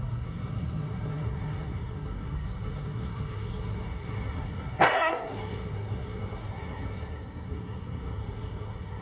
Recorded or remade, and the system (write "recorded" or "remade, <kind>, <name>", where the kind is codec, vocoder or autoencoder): remade, codec, SNAC